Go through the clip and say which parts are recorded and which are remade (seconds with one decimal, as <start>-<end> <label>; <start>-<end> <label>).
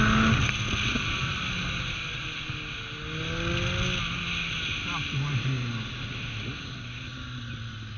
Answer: 0.0-0.9 recorded; 0.9-1.6 remade; 1.6-8.0 recorded